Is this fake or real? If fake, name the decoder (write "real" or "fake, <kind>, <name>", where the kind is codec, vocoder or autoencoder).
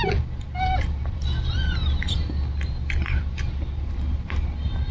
fake, vocoder, BigVGAN v2